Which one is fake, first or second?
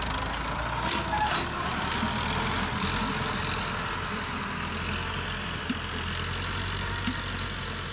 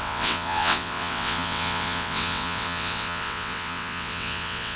second